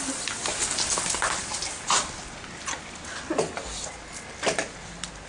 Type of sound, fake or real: real